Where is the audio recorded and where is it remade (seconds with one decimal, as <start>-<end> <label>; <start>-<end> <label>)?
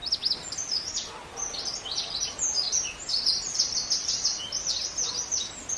0.0-5.8 recorded